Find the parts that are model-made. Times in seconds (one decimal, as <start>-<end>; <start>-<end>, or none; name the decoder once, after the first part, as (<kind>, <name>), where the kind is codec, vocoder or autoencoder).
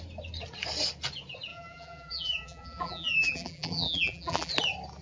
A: 1.5-4.5 (vocoder, BigVGAN v2)